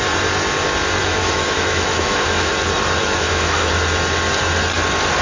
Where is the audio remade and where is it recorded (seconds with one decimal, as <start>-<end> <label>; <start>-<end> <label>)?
0.0-1.0 recorded; 1.0-2.5 remade; 2.5-3.0 recorded; 3.0-3.7 remade; 3.7-5.2 recorded